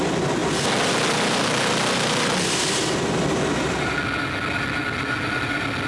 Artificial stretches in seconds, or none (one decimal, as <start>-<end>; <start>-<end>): none